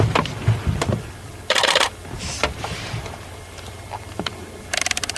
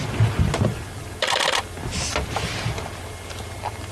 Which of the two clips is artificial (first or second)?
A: first